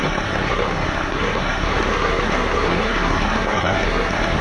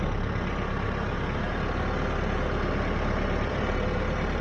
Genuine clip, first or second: second